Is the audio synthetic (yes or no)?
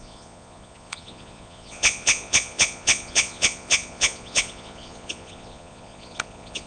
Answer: yes